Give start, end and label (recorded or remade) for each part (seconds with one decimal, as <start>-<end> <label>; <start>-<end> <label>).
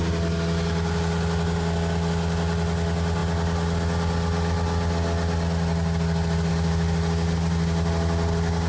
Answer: 0.0-8.7 recorded